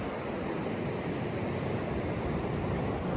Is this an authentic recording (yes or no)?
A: yes